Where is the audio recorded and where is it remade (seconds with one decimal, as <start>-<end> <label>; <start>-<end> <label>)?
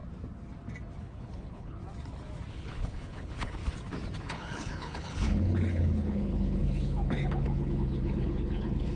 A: 0.0-1.0 recorded; 1.0-1.8 remade; 1.8-2.5 recorded; 2.5-3.6 remade; 3.6-4.2 recorded; 4.2-9.0 remade